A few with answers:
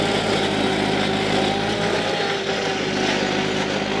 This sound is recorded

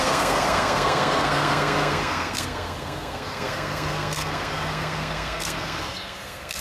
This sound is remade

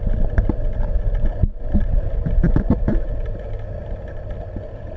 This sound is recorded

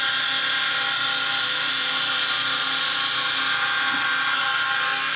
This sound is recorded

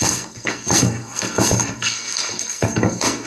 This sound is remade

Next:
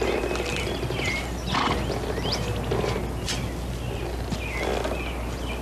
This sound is recorded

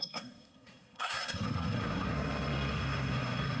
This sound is remade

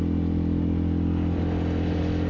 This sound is recorded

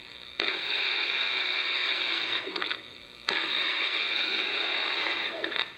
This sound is remade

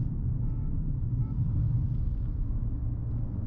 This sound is recorded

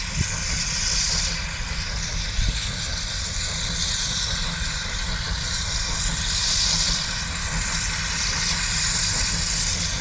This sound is recorded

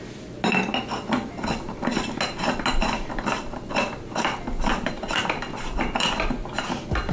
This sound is recorded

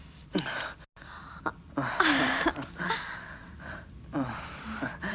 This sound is recorded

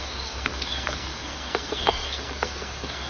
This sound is remade